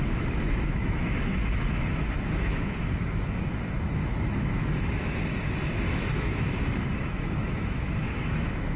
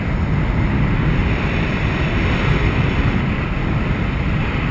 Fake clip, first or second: first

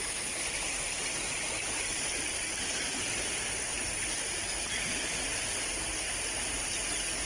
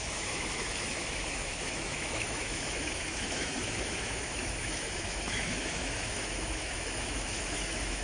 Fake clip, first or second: second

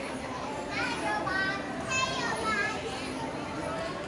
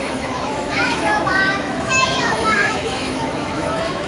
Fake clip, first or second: second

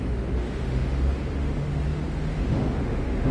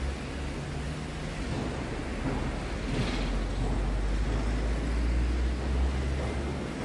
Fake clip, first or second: first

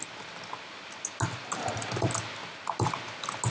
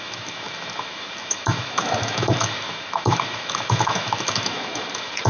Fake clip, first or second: second